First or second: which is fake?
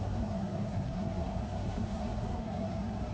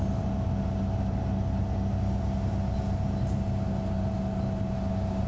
first